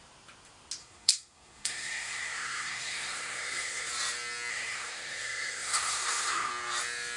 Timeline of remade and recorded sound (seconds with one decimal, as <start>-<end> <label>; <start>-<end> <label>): 0.0-0.8 recorded; 0.8-3.9 remade; 3.9-4.5 recorded; 4.5-6.5 remade; 6.5-7.2 recorded

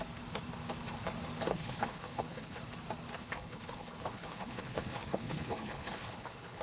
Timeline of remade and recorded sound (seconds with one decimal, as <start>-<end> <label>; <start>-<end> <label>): 0.0-1.5 recorded; 1.5-2.6 remade; 2.6-3.1 recorded; 3.1-6.6 remade

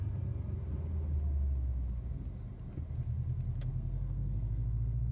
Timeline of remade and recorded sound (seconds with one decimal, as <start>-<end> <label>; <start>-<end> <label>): 0.0-3.7 recorded; 3.7-5.1 remade

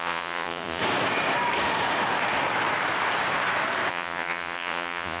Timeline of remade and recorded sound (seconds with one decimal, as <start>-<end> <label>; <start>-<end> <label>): 0.0-0.8 remade; 0.8-3.9 recorded; 3.9-5.2 remade

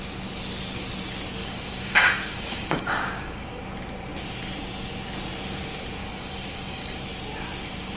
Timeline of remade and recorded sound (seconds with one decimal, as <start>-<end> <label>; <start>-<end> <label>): 0.0-1.4 recorded; 1.4-3.6 remade; 3.6-6.0 recorded; 6.0-7.0 remade; 7.0-8.0 recorded

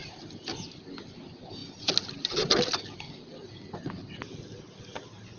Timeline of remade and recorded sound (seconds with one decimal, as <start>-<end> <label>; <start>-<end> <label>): 0.0-5.4 recorded

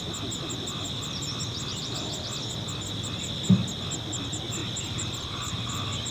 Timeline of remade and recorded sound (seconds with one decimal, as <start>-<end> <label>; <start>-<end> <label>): 0.0-4.6 recorded; 4.6-6.1 remade

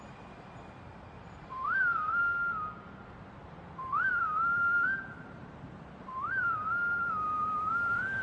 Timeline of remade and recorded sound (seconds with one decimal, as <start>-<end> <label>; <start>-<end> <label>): 0.0-2.2 remade; 2.2-3.5 recorded; 3.5-8.2 remade